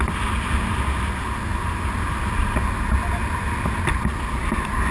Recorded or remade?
recorded